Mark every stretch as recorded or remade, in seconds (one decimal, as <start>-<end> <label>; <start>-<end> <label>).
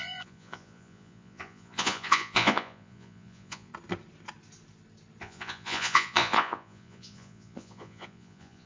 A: 0.0-3.7 remade; 3.7-5.2 recorded; 5.2-8.7 remade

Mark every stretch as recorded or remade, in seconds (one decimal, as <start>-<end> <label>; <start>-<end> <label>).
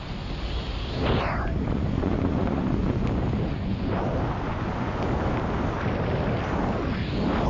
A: 0.0-1.3 recorded; 1.3-3.1 remade; 3.1-3.5 recorded; 3.5-4.1 remade; 4.1-4.5 recorded; 4.5-5.0 remade; 5.0-7.5 recorded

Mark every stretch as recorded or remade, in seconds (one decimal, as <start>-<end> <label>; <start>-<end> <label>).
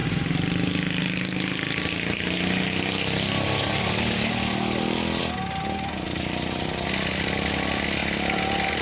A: 0.0-8.8 recorded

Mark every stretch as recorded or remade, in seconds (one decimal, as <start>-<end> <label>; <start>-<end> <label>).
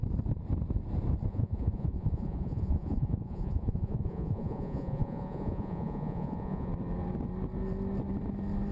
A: 0.0-1.3 recorded; 1.3-6.7 remade; 6.7-8.7 recorded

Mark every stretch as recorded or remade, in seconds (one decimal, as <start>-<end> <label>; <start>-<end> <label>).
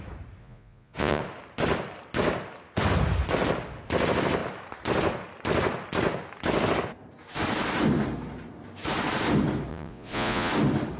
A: 0.0-0.4 recorded; 0.4-1.2 remade; 1.2-9.7 recorded; 9.7-10.5 remade; 10.5-11.0 recorded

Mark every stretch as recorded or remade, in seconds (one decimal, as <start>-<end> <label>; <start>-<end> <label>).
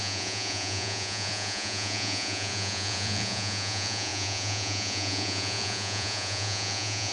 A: 0.0-7.1 remade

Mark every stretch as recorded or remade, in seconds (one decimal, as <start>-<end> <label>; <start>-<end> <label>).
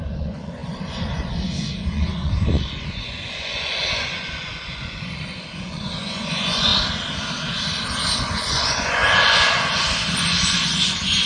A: 0.0-6.7 remade; 6.7-8.2 recorded; 8.2-11.3 remade